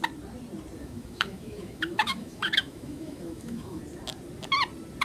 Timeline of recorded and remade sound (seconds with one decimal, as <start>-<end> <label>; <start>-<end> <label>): 0.0-0.8 recorded; 0.8-3.8 remade; 3.8-5.0 recorded